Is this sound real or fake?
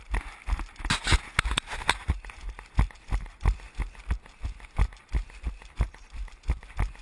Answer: real